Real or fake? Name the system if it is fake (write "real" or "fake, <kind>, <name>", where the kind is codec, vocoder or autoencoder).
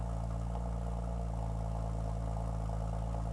real